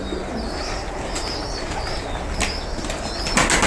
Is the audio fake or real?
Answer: real